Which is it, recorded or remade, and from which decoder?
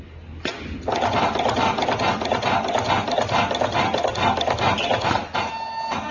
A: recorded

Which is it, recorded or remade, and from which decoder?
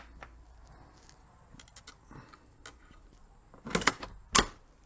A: recorded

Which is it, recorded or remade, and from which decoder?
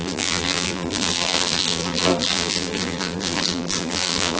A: remade, vocoder, BigVGAN v2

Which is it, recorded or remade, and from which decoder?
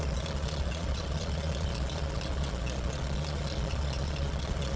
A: remade, vocoder, Vocos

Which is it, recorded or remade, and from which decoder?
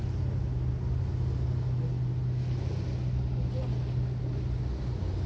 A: recorded